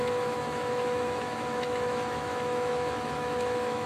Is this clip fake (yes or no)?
yes